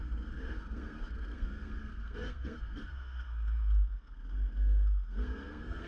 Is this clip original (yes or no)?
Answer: no